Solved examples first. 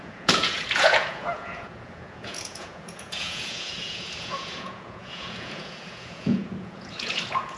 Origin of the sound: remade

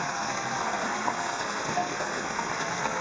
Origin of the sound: remade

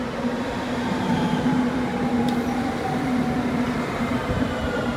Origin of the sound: remade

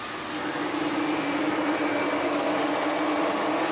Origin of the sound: recorded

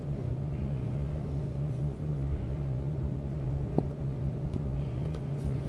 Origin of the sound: remade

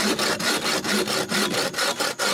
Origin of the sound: recorded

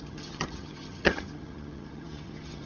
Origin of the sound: remade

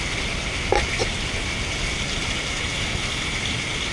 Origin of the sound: recorded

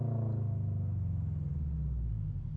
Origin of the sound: recorded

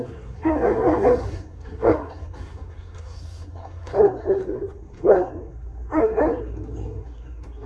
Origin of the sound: remade